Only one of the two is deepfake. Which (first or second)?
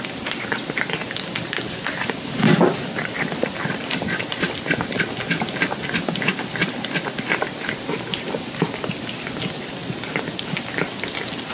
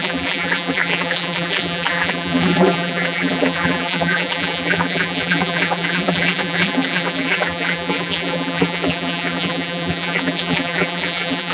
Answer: second